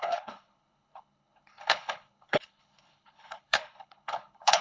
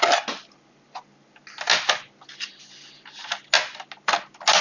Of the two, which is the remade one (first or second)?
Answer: first